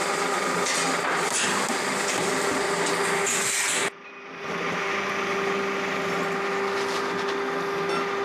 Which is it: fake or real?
real